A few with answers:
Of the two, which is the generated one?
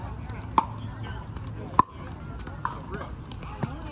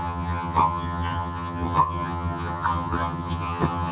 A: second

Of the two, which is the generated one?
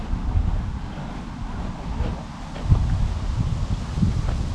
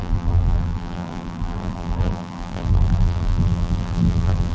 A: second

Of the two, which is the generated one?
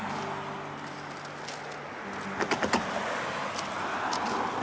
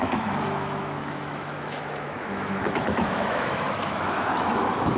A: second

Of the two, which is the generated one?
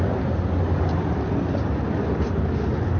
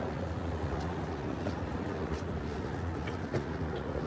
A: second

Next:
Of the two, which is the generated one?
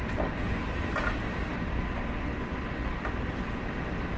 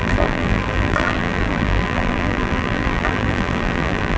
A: second